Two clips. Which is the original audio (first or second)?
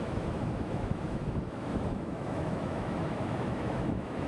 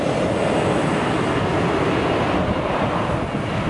second